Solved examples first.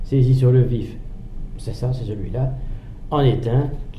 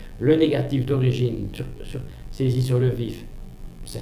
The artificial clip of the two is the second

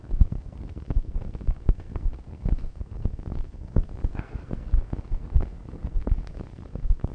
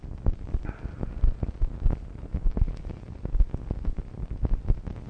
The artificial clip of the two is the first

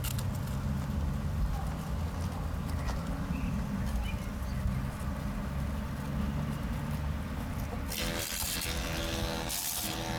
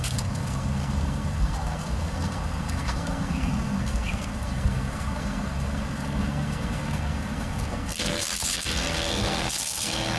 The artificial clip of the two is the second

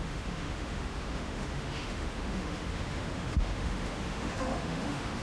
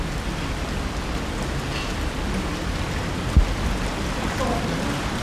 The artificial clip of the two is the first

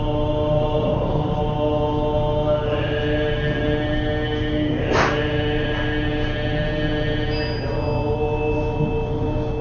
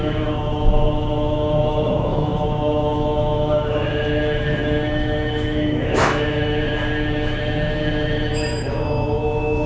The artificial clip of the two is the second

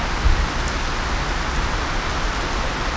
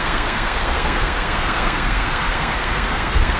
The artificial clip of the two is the second